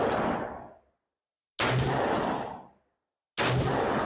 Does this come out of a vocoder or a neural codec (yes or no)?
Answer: no